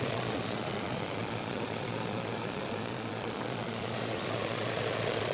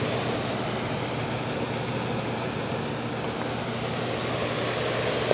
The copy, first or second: first